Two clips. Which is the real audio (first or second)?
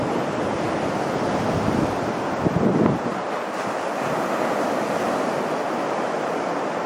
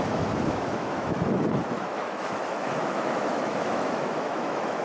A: first